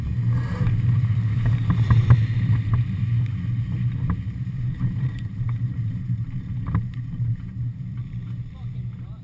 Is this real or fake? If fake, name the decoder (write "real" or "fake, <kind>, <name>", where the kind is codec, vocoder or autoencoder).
fake, vocoder, BigVGAN v2